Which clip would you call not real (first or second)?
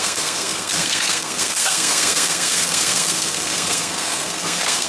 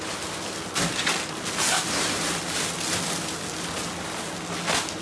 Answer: first